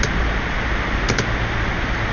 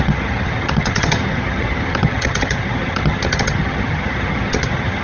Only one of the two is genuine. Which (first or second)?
first